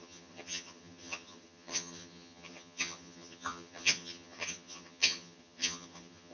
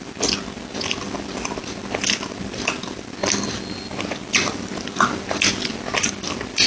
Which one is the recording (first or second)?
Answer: second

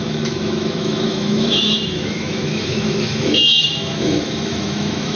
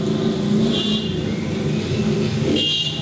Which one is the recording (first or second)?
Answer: second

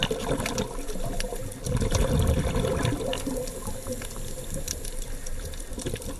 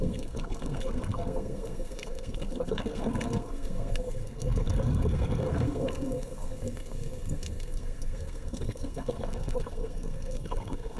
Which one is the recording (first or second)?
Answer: first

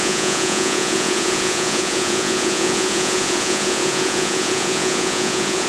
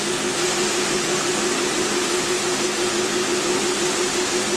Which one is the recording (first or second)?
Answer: second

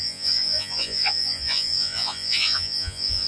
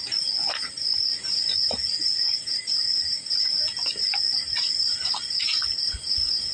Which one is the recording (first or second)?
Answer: second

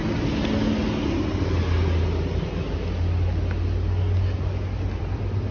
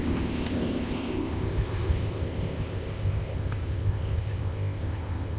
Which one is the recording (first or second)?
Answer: first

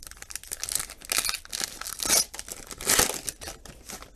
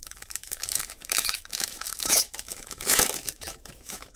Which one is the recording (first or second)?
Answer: first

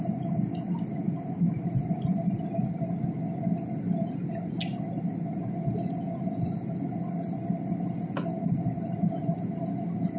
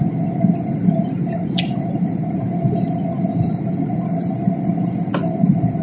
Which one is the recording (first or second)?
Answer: first